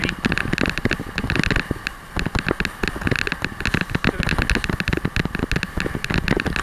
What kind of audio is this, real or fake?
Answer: real